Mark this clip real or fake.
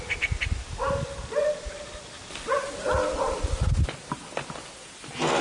real